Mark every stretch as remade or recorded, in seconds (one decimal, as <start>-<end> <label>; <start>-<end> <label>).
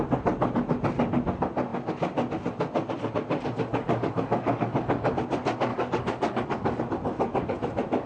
0.0-3.7 recorded; 3.7-5.1 remade; 5.1-5.7 recorded; 5.7-6.8 remade; 6.8-8.1 recorded